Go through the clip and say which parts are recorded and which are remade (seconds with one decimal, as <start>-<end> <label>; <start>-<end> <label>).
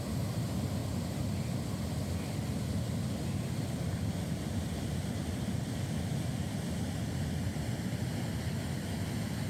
0.0-9.5 recorded